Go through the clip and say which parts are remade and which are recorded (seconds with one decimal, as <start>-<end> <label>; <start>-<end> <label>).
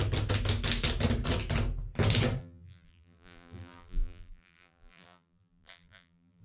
0.0-2.4 recorded; 2.4-6.4 remade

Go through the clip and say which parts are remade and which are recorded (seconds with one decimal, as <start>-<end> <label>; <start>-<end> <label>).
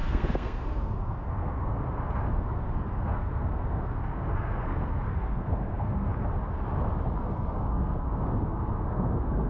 0.0-6.1 remade; 6.1-7.2 recorded; 7.2-9.5 remade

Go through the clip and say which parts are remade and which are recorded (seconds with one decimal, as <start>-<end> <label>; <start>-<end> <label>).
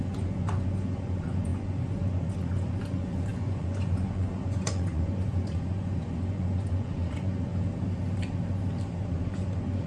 0.0-7.5 remade; 7.5-9.0 recorded; 9.0-9.9 remade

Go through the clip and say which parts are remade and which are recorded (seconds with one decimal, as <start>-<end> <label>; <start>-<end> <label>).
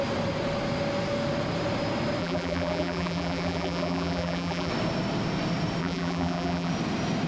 0.0-2.2 recorded; 2.2-4.7 remade; 4.7-5.8 recorded; 5.8-6.7 remade; 6.7-7.3 recorded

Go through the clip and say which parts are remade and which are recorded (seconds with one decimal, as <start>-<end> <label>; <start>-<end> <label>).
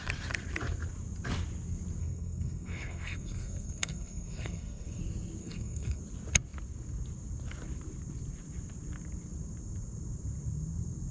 0.0-2.0 recorded; 2.0-5.0 remade; 5.0-5.4 recorded; 5.4-6.0 remade; 6.0-11.1 recorded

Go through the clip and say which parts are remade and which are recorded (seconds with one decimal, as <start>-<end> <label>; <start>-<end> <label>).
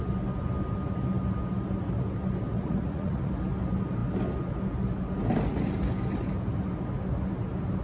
0.0-2.5 recorded; 2.5-3.3 remade; 3.3-7.8 recorded